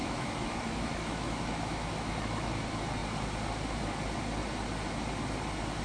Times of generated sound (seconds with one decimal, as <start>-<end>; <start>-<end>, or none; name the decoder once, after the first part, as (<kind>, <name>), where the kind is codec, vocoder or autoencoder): 0.0-2.5 (autoencoder, DAC-VAE)